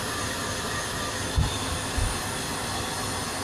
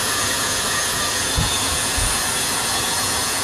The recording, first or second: first